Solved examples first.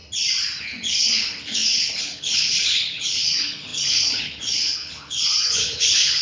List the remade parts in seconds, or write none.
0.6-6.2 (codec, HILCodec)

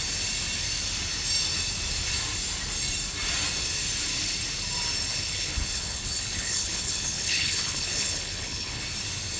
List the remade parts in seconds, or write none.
5.1-8.8 (codec, HILCodec)

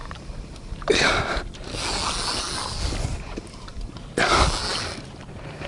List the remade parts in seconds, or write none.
none

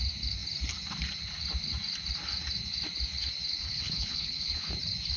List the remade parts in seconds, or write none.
3.6-4.7 (codec, HILCodec)

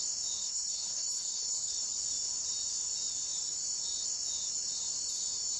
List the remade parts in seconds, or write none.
0.4-1.7 (codec, HILCodec)

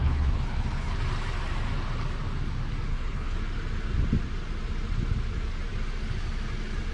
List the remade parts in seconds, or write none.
0.0-1.0 (codec, HILCodec); 2.9-3.4